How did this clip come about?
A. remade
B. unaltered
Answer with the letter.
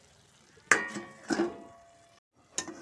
B